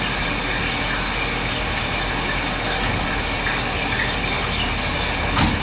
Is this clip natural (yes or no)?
yes